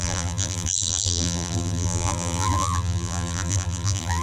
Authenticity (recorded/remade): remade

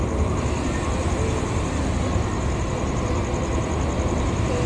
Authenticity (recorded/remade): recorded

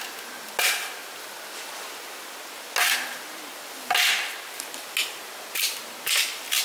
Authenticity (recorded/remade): recorded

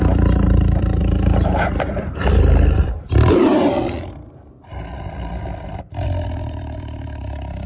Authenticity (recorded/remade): remade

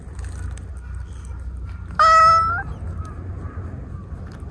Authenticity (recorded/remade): recorded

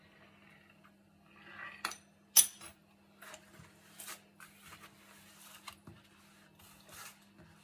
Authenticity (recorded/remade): recorded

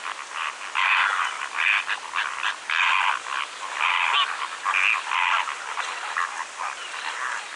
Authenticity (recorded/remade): recorded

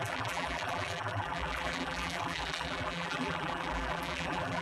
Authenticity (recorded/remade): remade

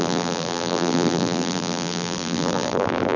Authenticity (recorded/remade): remade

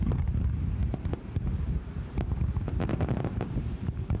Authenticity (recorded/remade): remade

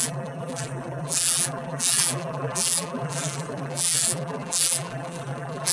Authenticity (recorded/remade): remade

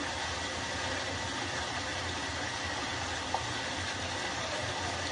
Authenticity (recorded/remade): recorded